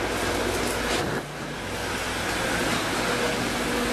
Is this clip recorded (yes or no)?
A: yes